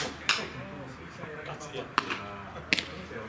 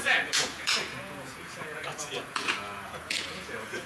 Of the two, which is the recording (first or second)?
first